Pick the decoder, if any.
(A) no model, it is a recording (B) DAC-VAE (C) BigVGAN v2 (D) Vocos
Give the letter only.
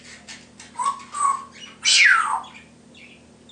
A